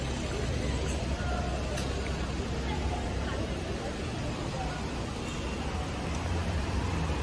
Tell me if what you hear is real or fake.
real